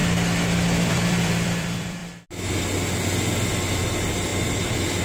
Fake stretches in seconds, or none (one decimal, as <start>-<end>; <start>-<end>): 0.9-2.0; 3.8-5.0